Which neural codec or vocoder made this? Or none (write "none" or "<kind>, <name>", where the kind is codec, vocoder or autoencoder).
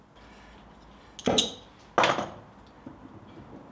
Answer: none